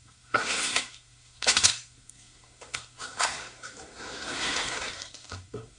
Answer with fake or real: fake